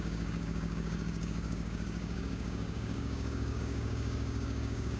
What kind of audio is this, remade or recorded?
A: remade